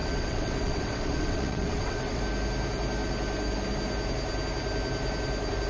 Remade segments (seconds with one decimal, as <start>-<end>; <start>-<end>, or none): 0.0-2.2